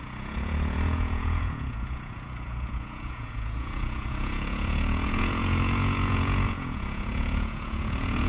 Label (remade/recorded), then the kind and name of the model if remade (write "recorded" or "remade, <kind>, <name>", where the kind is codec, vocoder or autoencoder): remade, vocoder, Vocos